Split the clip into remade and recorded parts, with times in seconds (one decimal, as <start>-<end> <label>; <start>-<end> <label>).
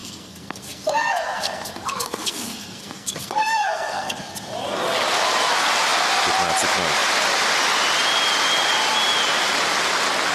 0.0-4.3 remade; 4.3-10.3 recorded